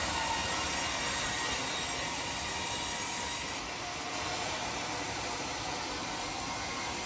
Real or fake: real